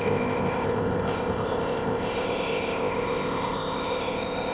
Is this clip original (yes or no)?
no